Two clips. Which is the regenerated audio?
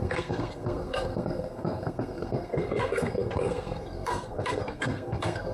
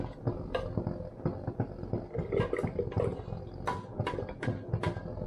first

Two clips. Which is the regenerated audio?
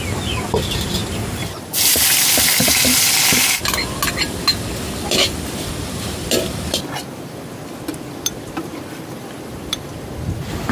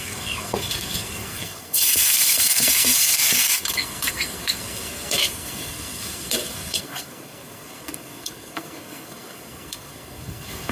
second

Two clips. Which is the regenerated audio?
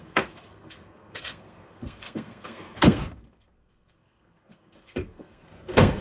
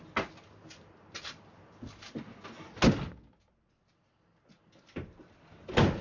first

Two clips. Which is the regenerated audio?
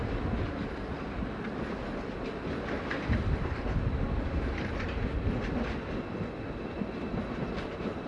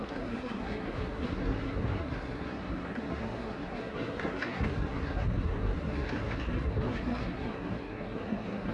second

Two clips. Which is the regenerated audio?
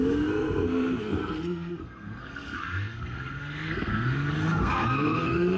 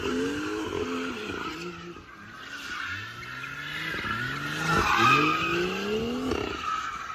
first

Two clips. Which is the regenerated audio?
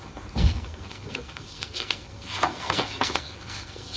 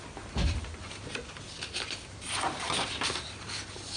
first